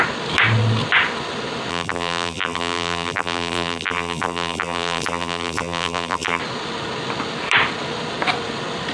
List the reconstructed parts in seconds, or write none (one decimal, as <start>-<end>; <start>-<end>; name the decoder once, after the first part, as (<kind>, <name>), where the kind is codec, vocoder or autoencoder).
1.7-6.4 (vocoder, BigVGAN v2)